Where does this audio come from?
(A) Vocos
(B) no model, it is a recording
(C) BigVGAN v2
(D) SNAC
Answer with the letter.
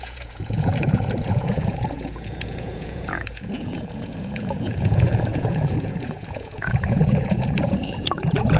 A